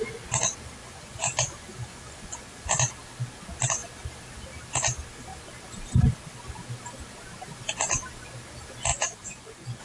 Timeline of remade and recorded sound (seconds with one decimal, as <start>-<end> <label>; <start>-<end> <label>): 0.0-0.8 recorded; 0.8-2.9 remade; 2.9-8.9 recorded; 8.9-9.8 remade

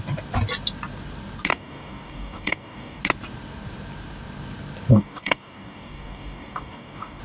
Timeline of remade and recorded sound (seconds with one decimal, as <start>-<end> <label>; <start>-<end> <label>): 0.0-1.5 recorded; 1.5-3.0 remade; 3.0-4.9 recorded; 4.9-7.2 remade

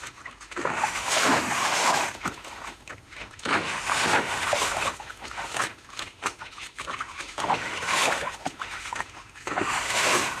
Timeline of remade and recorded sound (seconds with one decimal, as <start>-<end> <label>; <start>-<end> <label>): 0.0-10.4 remade